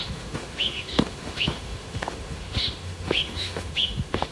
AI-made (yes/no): yes